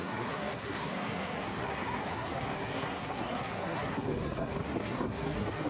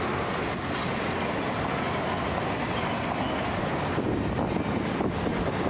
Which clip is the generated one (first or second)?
first